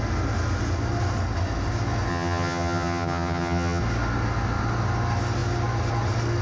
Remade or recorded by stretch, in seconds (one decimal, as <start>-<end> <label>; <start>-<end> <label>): 0.0-2.1 recorded; 2.1-3.8 remade; 3.8-6.4 recorded